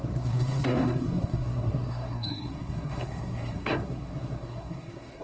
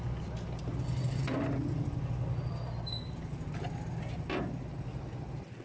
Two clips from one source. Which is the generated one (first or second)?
first